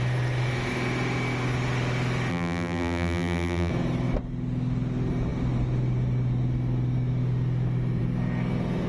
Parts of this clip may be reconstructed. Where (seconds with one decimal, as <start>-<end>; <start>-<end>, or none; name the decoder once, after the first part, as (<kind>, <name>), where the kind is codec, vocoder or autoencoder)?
2.3-3.7 (vocoder, BigVGAN v2)